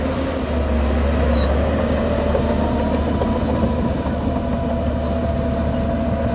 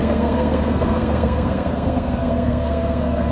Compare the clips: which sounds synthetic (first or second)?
second